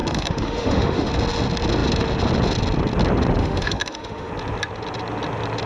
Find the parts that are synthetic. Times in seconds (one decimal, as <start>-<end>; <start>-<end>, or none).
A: 0.0-1.1; 3.4-4.3